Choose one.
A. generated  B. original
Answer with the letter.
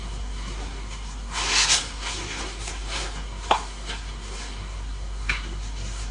A